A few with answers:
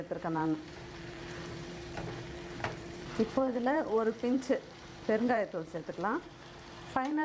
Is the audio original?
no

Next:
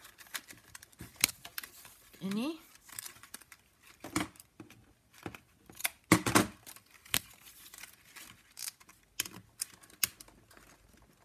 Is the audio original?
yes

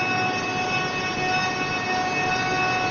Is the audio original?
yes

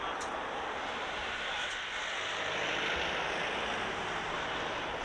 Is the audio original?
yes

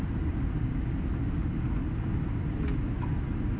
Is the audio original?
yes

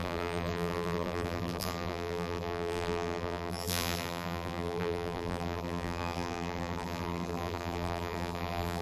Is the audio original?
no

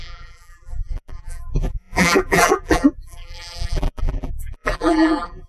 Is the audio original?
no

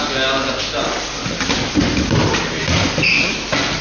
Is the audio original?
yes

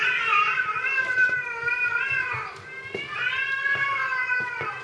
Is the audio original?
no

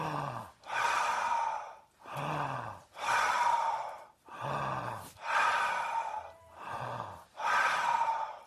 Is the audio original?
yes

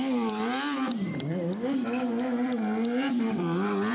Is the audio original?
no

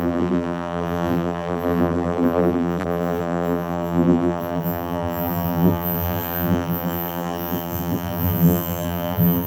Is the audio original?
no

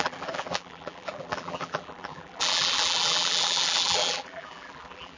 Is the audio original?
no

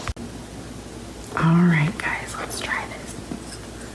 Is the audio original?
yes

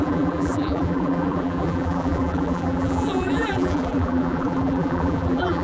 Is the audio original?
no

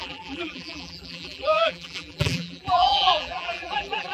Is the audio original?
no